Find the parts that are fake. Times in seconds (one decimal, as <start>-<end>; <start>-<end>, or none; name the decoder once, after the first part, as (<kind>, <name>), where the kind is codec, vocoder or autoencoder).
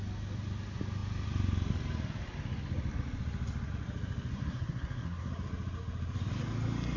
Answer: 4.3-5.3 (codec, SNAC)